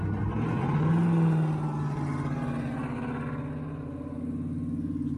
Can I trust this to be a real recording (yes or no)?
yes